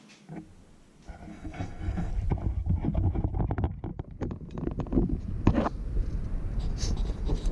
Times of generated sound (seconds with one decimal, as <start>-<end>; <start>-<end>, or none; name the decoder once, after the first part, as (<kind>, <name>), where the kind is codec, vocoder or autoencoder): 1.3-2.1 (codec, SNAC)